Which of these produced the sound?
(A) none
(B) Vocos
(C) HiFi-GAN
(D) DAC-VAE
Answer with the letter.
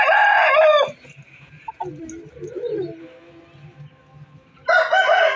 A